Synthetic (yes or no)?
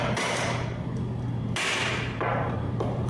yes